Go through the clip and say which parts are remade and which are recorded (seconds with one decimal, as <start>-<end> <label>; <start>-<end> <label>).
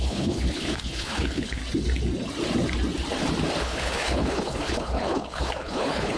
0.0-1.6 remade; 1.6-3.6 recorded; 3.6-6.2 remade